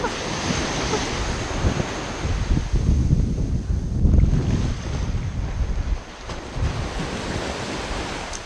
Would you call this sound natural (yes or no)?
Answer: yes